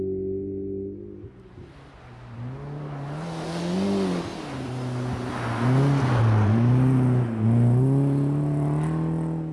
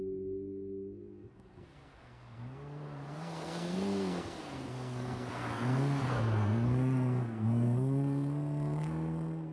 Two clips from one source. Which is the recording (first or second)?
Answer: first